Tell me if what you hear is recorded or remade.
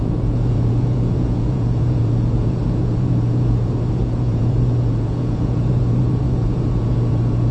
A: remade